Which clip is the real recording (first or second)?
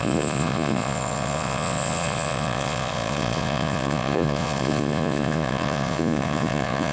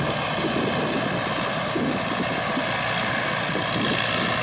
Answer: second